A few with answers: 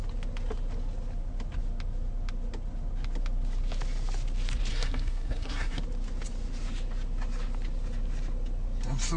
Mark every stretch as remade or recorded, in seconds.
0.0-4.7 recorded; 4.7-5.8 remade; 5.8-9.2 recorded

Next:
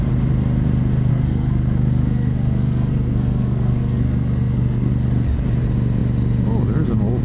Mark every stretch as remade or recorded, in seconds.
0.0-1.1 recorded; 1.1-4.9 remade; 4.9-7.2 recorded

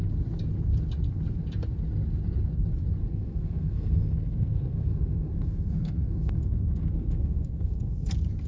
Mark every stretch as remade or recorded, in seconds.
0.0-3.0 recorded; 3.0-8.1 remade; 8.1-8.5 recorded